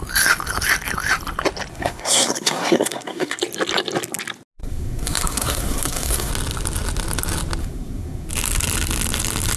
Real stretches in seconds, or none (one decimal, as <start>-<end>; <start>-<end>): 0.0-1.7; 3.4-4.6; 6.3-7.6; 8.3-9.6